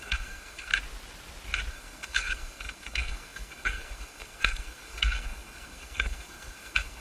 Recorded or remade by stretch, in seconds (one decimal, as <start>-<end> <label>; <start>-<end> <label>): 0.0-0.7 remade; 0.7-1.7 recorded; 1.7-7.0 remade